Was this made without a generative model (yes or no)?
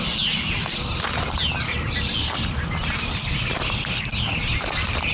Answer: yes